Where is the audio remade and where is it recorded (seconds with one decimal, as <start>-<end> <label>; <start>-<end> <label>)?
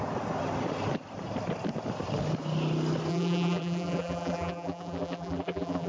0.0-3.1 recorded; 3.1-5.9 remade